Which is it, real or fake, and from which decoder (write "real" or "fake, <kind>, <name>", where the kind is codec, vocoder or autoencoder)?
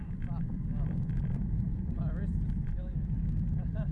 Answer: fake, vocoder, BigVGAN v2